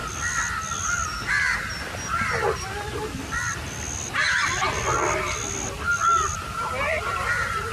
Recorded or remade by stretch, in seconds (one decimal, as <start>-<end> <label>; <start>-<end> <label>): 0.0-7.7 recorded